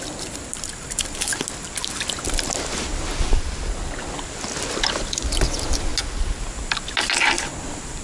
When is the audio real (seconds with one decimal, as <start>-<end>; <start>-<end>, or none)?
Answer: 1.3-5.0; 5.9-7.6

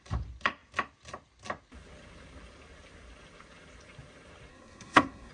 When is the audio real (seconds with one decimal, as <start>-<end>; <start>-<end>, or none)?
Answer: 0.0-4.5